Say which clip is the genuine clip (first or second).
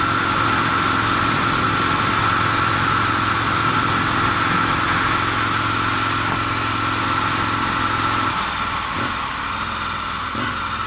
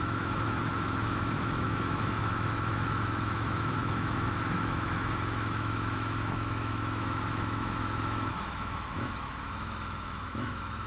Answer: first